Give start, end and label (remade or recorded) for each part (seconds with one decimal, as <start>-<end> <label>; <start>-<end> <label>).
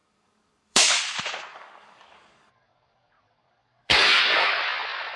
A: 0.0-1.0 remade; 1.0-1.5 recorded; 1.5-4.6 remade; 4.6-5.2 recorded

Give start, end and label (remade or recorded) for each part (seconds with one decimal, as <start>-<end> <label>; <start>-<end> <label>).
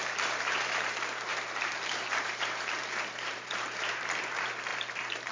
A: 0.0-5.3 remade